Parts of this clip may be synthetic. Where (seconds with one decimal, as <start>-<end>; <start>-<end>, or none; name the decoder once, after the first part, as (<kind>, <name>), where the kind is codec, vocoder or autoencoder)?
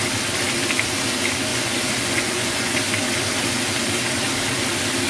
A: 1.5-2.8 (vocoder, Vocos)